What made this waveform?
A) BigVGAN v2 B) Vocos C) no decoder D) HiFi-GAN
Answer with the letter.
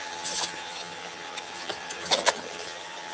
D